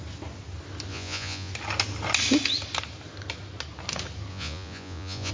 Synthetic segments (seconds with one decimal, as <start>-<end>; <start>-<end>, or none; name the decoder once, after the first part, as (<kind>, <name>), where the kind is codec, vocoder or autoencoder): 0.9-1.5 (vocoder, Vocos); 4.3-5.3